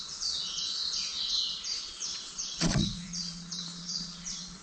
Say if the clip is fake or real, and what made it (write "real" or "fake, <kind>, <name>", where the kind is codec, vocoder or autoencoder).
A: fake, vocoder, Vocos